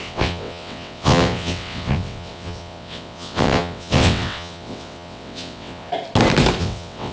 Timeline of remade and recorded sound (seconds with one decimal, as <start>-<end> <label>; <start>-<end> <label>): 0.0-5.9 remade; 5.9-6.6 recorded; 6.6-7.1 remade